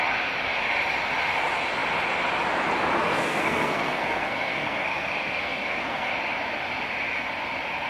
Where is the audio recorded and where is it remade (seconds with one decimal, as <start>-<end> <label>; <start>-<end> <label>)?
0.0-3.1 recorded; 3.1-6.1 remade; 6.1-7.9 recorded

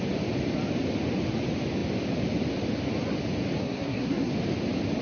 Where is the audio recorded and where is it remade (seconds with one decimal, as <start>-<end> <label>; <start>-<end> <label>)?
0.0-3.6 recorded; 3.6-4.3 remade; 4.3-5.0 recorded

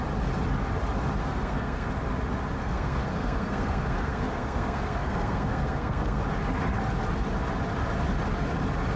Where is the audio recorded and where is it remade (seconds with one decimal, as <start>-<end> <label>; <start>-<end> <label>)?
0.0-1.2 recorded; 1.2-1.9 remade; 1.9-2.6 recorded; 2.6-6.2 remade; 6.2-9.0 recorded